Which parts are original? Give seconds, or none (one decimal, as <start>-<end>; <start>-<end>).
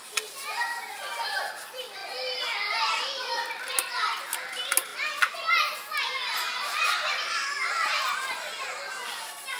0.0-9.6